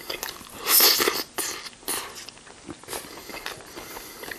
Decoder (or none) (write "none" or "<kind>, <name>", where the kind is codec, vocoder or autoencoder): none